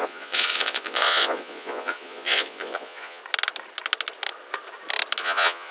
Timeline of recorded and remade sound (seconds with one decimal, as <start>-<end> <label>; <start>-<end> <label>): 0.0-3.2 remade; 3.2-5.2 recorded; 5.2-5.7 remade